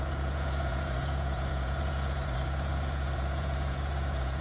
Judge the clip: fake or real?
fake